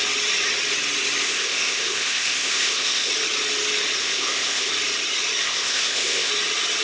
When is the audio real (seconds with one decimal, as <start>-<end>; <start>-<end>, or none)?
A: 0.0-1.2; 3.1-4.0; 4.7-5.4; 6.3-6.8